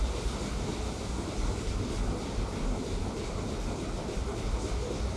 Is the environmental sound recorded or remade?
recorded